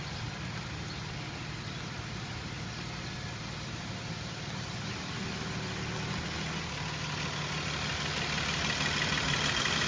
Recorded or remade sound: recorded